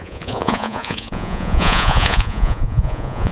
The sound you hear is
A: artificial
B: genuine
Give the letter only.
A